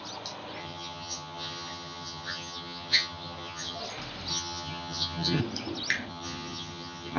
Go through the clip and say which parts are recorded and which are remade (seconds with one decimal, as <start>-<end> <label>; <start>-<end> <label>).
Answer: 0.0-0.6 recorded; 0.6-3.8 remade; 3.8-4.3 recorded; 4.3-5.4 remade; 5.4-6.1 recorded; 6.1-7.2 remade